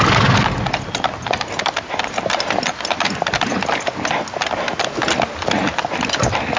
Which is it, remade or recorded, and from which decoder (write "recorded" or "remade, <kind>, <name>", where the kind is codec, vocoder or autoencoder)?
recorded